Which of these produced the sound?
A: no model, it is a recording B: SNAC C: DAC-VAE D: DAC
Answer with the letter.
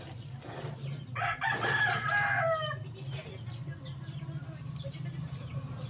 A